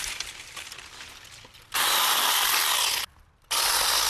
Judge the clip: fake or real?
real